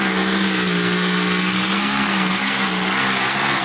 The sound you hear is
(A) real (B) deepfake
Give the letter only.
B